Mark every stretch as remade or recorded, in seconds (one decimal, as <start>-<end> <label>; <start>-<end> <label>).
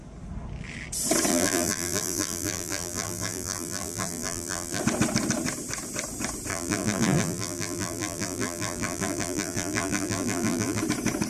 0.0-1.3 recorded; 1.3-4.8 remade; 4.8-6.5 recorded; 6.5-10.8 remade; 10.8-11.3 recorded